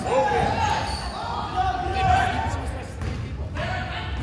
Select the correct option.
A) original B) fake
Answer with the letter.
A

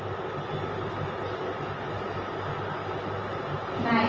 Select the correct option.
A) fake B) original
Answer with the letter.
B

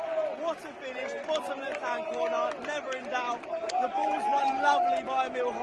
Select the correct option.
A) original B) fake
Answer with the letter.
A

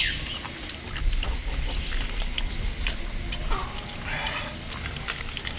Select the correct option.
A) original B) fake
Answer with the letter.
A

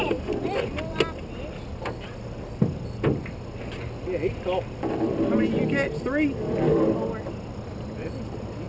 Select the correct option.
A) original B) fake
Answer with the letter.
A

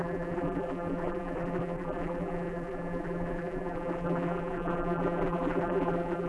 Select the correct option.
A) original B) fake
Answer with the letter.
B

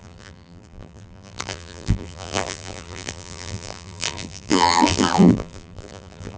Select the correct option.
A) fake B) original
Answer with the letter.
A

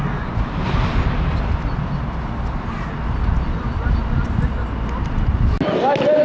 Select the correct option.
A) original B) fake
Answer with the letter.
A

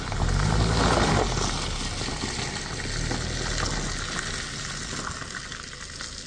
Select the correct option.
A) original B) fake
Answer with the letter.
A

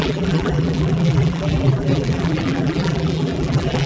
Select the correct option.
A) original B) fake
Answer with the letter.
B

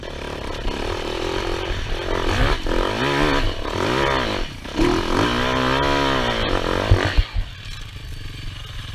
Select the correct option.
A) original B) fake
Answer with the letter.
A